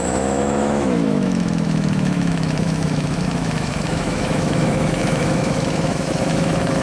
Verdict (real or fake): fake